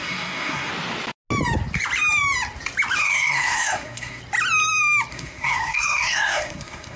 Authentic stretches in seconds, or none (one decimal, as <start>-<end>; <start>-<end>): 0.7-3.0; 4.2-5.1